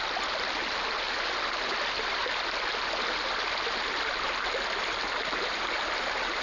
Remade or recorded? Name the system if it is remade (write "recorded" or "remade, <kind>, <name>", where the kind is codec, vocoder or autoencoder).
recorded